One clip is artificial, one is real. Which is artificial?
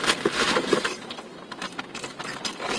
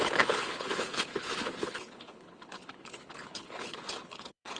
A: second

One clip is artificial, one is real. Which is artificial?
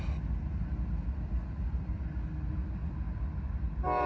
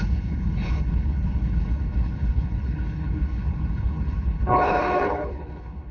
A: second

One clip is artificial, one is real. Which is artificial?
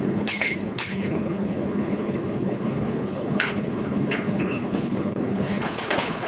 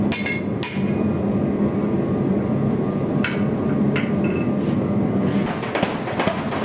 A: first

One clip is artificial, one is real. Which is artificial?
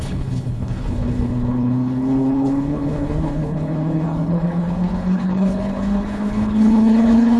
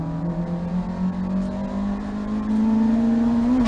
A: first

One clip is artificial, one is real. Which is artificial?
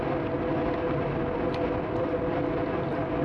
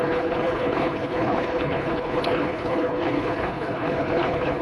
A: second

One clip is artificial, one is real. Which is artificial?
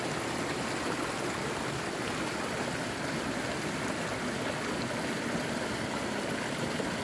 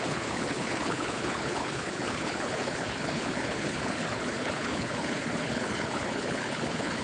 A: second